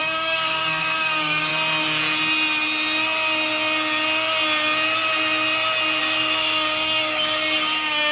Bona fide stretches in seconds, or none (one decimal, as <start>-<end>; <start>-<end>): 1.5-6.0